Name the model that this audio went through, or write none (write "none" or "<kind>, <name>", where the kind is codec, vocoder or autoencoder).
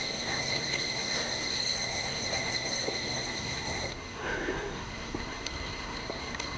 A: codec, SNAC